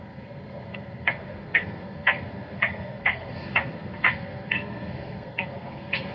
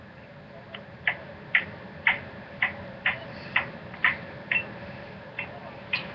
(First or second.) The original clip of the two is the second